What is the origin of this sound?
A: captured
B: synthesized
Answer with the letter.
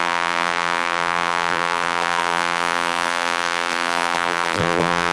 B